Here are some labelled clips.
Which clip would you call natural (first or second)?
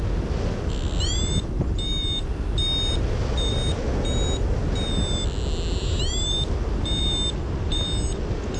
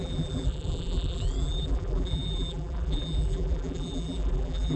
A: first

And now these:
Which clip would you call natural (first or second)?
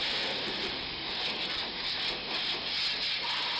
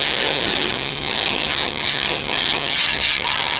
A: first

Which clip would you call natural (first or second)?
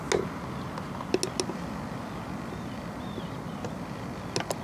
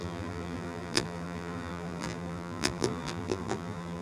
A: first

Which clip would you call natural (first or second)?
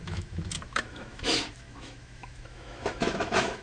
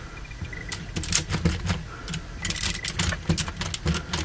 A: second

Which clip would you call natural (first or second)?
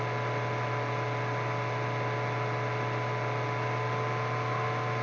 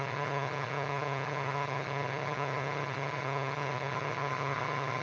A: first